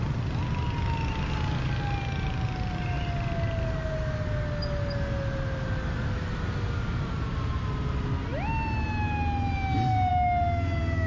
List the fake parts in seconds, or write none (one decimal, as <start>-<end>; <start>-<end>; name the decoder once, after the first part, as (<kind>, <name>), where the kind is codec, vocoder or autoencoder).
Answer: none

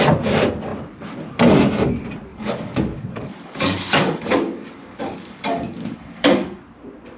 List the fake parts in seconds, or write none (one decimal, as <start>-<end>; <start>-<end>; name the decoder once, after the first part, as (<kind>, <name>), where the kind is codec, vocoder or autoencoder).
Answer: 2.3-6.6 (codec, DAC)

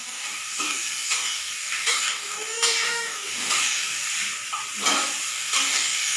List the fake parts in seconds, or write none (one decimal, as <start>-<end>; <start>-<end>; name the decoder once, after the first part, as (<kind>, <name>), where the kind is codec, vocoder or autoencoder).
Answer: 0.0-4.1 (codec, DAC); 5.3-6.2

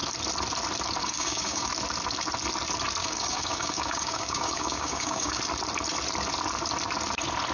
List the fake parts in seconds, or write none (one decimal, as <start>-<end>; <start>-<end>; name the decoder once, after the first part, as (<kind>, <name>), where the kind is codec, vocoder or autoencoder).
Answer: 1.0-1.7 (codec, DAC); 3.0-5.4

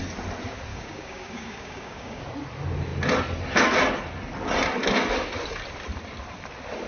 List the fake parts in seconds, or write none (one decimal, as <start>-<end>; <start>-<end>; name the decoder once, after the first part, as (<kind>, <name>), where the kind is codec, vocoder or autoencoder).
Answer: 0.7-2.2 (codec, DAC)